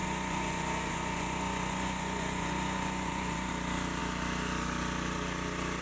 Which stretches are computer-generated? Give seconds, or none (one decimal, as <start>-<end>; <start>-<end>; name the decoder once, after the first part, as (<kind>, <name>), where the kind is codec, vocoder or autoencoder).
0.0-3.5 (vocoder, Vocos)